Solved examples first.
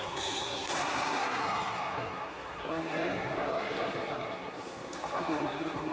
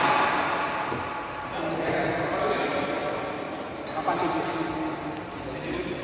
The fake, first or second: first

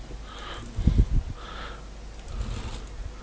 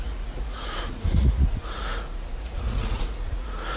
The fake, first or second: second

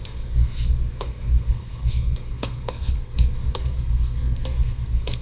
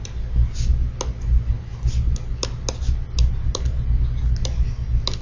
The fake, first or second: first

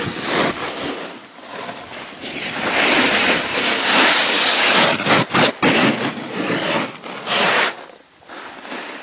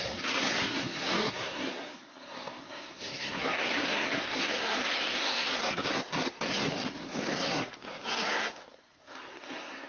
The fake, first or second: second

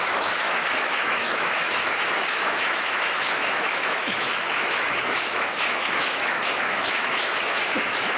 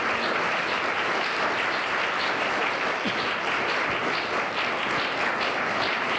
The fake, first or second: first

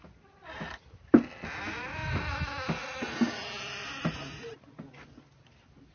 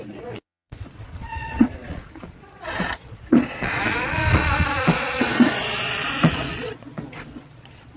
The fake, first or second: second